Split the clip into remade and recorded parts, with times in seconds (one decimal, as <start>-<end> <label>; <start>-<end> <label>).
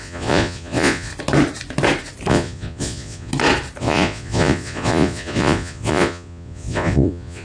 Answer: 0.0-1.1 remade; 1.1-2.3 recorded; 2.3-3.3 remade; 3.3-3.8 recorded; 3.8-7.4 remade